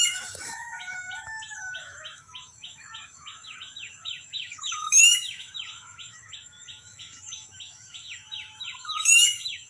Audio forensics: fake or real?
fake